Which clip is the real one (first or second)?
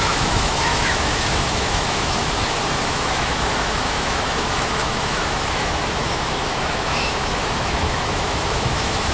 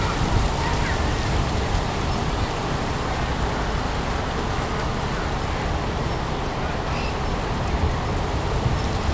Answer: second